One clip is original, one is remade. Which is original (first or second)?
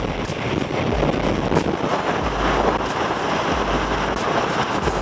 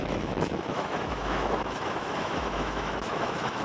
first